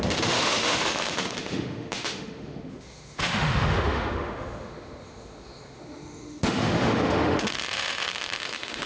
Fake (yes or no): yes